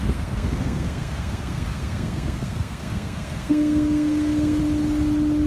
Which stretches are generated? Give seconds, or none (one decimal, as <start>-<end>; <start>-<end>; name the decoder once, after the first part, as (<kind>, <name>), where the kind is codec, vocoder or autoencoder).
0.0-4.6 (codec, SNAC)